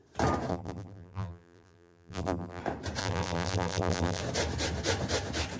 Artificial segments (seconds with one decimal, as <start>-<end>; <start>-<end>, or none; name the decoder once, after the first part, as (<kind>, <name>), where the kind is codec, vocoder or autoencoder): 0.5-2.6 (vocoder, BigVGAN v2); 3.0-4.2